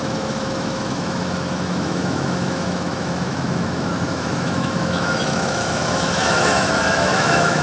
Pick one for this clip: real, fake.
fake